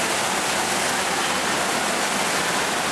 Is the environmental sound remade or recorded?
recorded